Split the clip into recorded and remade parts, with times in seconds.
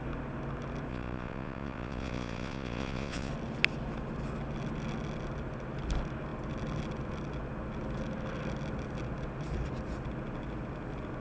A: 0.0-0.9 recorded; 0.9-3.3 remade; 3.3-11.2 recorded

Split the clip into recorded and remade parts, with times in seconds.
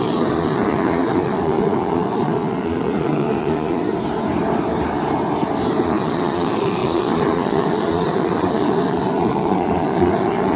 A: 0.0-3.8 remade; 3.8-5.8 recorded; 5.8-10.6 remade